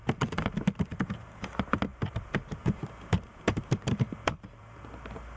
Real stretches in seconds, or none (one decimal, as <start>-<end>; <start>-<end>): 0.0-0.9; 1.5-1.9